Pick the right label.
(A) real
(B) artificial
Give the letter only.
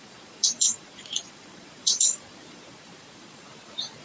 B